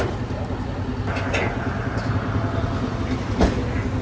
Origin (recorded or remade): recorded